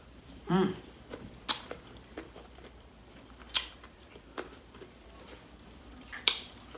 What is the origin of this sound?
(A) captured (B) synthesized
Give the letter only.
B